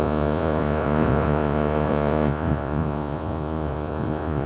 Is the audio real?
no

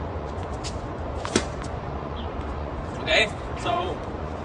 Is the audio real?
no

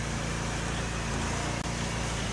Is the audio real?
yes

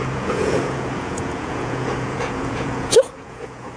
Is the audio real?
no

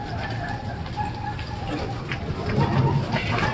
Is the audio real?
yes